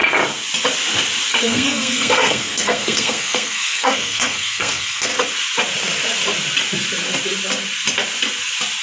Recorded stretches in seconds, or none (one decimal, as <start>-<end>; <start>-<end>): 0.0-1.3; 5.1-8.8